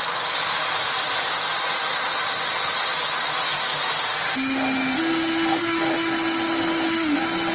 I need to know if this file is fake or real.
real